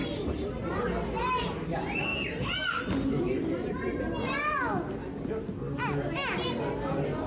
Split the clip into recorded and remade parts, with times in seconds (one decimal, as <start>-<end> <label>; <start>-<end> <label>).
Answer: 0.0-7.3 recorded